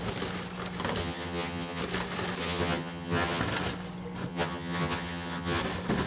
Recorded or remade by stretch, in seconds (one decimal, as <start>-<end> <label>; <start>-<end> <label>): 0.0-1.0 recorded; 1.0-1.8 remade; 1.8-2.4 recorded; 2.4-3.4 remade; 3.4-4.3 recorded; 4.3-5.6 remade; 5.6-6.1 recorded